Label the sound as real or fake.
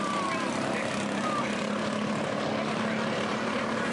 real